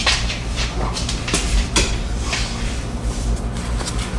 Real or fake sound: fake